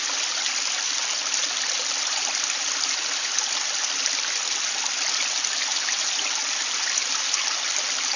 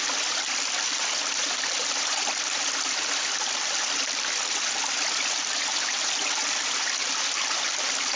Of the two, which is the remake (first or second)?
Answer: second